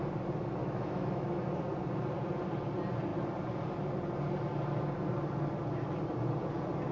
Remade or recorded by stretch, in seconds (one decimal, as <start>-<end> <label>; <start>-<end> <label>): 0.0-0.6 recorded; 0.6-1.4 remade; 1.4-6.9 recorded